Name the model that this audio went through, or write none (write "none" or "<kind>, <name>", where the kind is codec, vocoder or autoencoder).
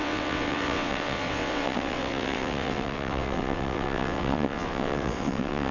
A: vocoder, WaveNeXt